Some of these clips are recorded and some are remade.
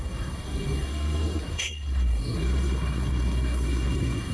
remade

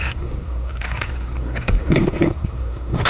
remade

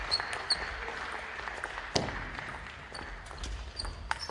recorded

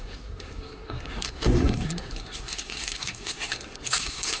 remade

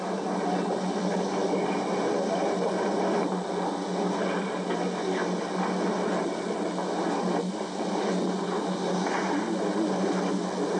recorded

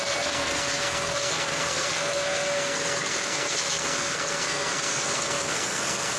remade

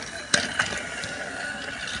recorded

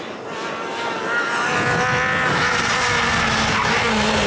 recorded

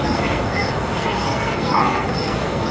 remade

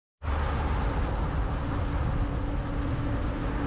recorded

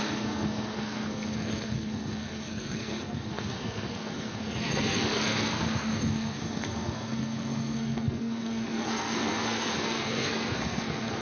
remade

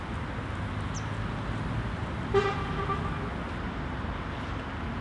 recorded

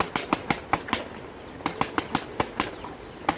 recorded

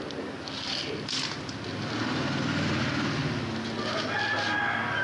recorded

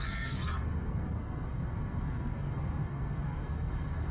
remade